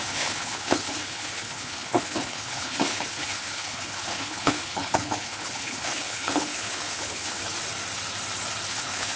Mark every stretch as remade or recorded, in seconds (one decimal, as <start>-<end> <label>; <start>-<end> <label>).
0.0-7.4 remade; 7.4-8.7 recorded; 8.7-9.2 remade